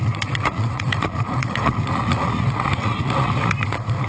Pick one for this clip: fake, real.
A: fake